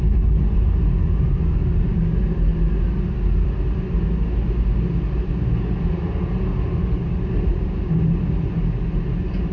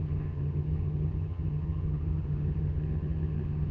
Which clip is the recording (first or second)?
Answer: first